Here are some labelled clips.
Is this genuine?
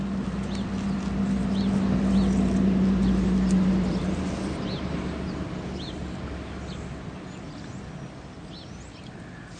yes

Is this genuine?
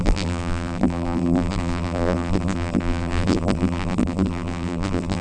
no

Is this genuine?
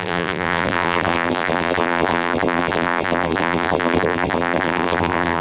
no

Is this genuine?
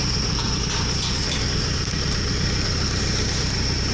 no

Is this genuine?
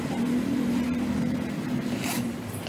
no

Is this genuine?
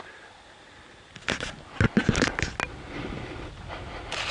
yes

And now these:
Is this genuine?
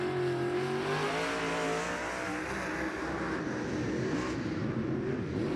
yes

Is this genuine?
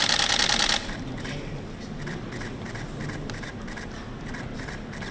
yes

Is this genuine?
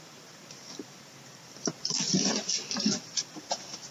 no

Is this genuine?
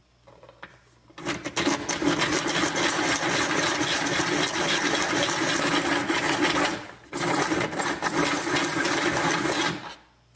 yes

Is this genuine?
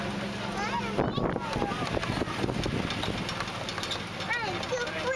yes